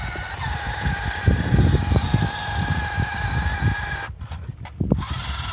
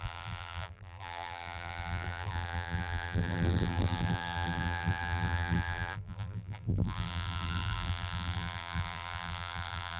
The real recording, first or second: first